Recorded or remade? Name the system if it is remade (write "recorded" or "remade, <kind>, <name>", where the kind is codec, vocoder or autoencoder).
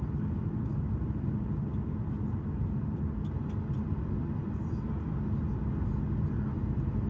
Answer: recorded